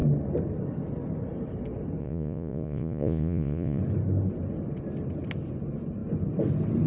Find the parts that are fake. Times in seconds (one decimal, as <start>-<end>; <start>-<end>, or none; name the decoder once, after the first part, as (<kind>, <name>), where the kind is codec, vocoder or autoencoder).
2.0-3.8 (vocoder, Vocos)